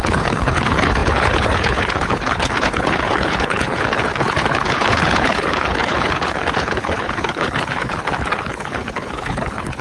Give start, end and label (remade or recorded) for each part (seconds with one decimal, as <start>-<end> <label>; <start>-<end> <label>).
0.0-9.8 remade